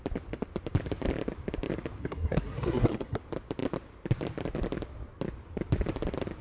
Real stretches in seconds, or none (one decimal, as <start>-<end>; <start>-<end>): 0.0-2.0; 3.2-6.4